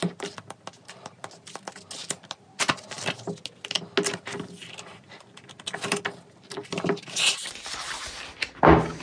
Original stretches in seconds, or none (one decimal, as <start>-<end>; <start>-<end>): 0.0-9.0